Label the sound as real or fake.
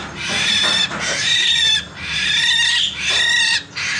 real